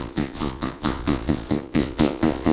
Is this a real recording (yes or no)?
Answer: no